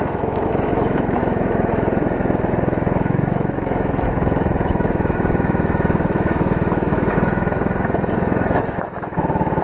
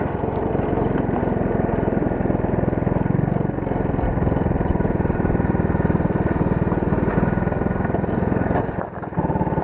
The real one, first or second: second